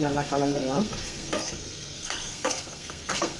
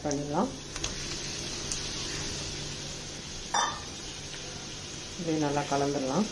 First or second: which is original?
second